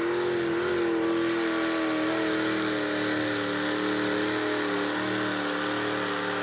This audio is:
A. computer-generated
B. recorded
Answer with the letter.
B